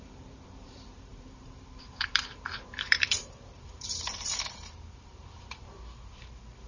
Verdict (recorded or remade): remade